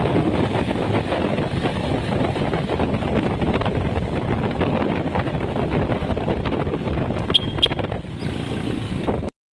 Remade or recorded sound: recorded